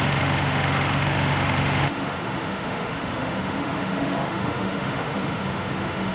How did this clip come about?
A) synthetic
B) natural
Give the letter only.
A